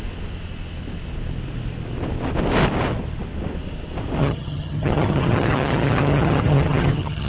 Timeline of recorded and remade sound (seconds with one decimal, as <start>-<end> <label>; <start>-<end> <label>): 0.0-4.2 recorded; 4.2-7.3 remade